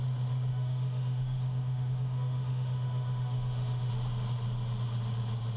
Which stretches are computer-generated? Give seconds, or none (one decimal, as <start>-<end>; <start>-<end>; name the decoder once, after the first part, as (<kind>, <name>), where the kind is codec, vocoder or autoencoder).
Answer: 0.5-3.9 (autoencoder, DAC-VAE)